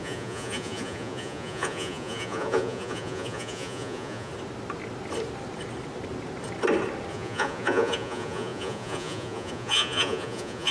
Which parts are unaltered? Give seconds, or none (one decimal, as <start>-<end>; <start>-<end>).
4.3-7.1